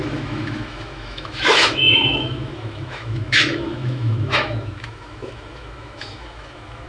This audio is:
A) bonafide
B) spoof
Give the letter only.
B